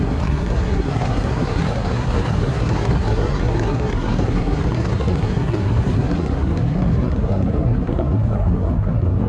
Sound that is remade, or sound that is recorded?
remade